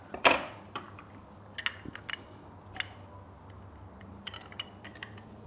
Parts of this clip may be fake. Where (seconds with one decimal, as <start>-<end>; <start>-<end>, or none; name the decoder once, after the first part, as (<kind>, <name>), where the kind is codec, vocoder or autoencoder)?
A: 0.0-1.2 (vocoder, BigVGAN v2); 4.0-5.5